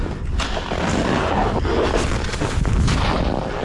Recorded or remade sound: recorded